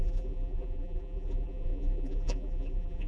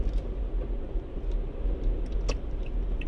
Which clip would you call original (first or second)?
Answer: second